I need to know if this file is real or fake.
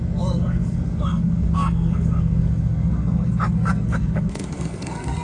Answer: fake